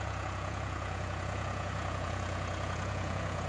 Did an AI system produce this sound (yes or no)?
yes